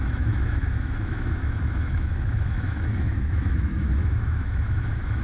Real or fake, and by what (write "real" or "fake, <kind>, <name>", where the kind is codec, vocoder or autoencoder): fake, autoencoder, DAC-VAE